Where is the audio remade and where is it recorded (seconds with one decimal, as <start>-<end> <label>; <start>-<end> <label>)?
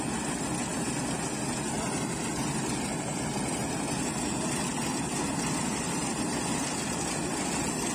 0.0-0.7 remade; 0.7-1.7 recorded; 1.7-7.9 remade